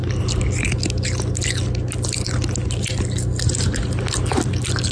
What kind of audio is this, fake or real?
real